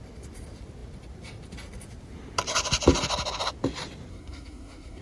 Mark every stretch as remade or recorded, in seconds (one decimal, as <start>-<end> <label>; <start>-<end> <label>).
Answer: 0.0-4.1 recorded; 4.1-5.0 remade